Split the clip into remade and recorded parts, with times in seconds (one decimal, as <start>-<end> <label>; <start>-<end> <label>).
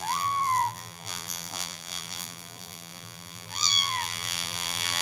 0.0-5.0 remade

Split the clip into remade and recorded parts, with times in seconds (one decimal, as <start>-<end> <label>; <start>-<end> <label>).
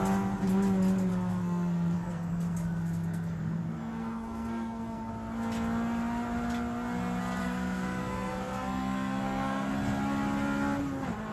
0.0-1.1 recorded; 1.1-5.1 remade; 5.1-7.4 recorded; 7.4-9.7 remade; 9.7-11.3 recorded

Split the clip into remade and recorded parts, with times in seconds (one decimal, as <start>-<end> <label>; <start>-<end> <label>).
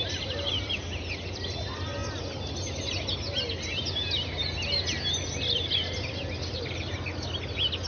0.0-7.9 recorded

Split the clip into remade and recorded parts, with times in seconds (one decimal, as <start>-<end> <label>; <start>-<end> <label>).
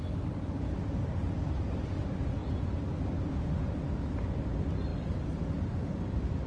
0.0-6.5 recorded